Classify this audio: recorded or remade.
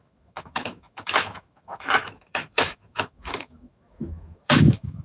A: remade